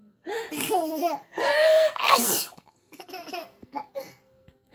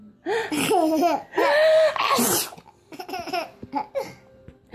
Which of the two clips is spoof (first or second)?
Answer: first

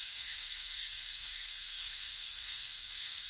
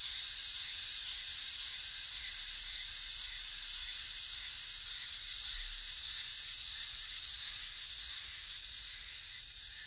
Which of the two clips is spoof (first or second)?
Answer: first